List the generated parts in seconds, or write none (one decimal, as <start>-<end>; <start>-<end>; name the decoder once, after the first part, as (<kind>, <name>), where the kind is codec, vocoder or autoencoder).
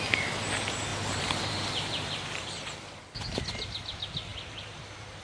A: 0.9-3.0 (vocoder, BigVGAN v2)